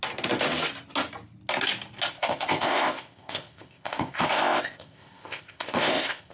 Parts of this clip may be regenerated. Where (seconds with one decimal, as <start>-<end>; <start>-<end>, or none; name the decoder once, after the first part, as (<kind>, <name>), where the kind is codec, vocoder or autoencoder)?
2.1-6.3 (codec, ZipCodec)